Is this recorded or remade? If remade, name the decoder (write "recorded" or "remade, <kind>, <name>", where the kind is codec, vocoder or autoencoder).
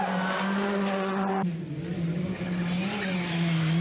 recorded